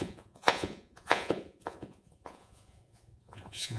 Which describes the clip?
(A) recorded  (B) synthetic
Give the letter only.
B